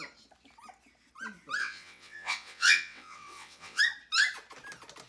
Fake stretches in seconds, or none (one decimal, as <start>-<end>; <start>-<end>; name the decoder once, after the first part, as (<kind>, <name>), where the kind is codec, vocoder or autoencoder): 1.6-3.8 (vocoder, WaveNeXt)